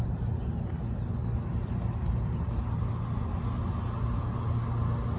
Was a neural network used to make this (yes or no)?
no